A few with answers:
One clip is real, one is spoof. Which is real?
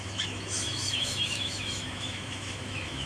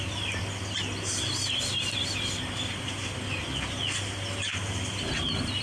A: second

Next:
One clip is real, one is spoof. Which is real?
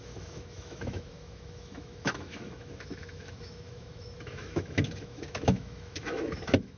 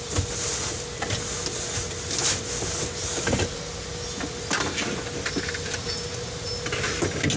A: second